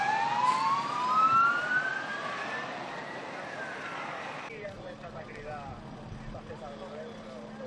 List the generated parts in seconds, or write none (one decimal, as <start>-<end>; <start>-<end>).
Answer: none